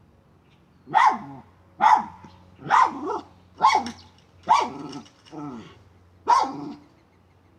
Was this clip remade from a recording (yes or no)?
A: no